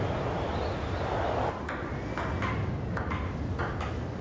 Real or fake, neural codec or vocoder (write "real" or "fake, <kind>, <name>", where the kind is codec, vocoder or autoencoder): real